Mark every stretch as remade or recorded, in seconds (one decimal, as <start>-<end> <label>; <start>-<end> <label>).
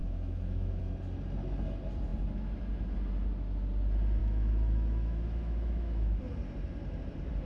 0.0-0.8 remade; 0.8-4.2 recorded; 4.2-6.2 remade; 6.2-7.5 recorded